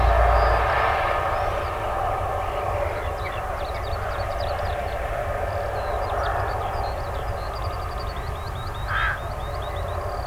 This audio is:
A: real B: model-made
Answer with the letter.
A